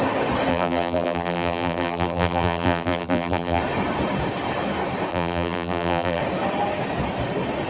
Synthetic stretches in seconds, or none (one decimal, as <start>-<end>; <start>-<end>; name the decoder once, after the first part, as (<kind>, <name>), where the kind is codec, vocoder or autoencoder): 0.5-3.6 (vocoder, BigVGAN v2); 5.1-6.2